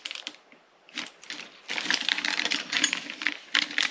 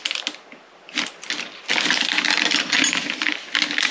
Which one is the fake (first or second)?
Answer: first